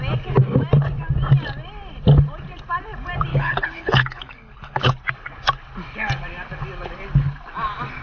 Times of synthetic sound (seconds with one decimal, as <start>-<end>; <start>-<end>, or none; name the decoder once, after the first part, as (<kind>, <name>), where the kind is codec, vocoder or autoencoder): 3.3-4.9 (codec, HILCodec)